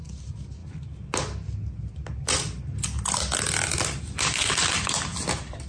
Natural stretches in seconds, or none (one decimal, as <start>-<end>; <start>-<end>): 0.0-5.7